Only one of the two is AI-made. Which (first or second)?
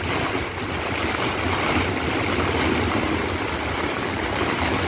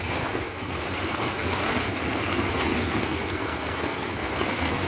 second